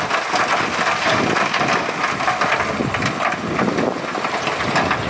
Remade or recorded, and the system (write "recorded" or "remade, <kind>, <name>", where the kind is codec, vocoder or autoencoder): recorded